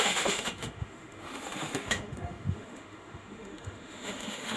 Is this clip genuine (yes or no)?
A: no